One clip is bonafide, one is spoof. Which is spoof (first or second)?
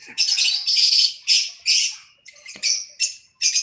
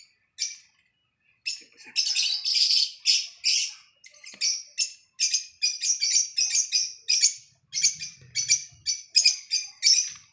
first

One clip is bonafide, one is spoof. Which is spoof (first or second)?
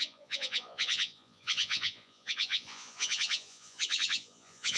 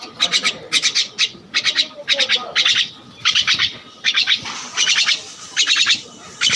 first